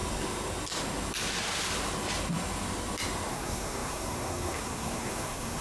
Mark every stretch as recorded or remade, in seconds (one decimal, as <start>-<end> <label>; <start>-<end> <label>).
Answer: 0.0-3.3 recorded; 3.3-5.6 remade